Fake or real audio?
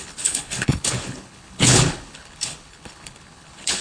fake